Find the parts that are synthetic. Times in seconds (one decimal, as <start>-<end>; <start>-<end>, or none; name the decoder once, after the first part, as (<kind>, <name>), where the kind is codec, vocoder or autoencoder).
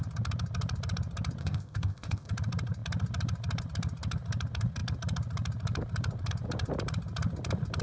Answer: 1.4-2.3 (codec, ZipCodec)